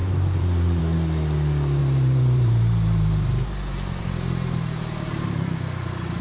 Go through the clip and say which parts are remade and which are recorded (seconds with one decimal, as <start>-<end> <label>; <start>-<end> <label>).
0.0-0.8 remade; 0.8-1.8 recorded; 1.8-5.5 remade; 5.5-6.2 recorded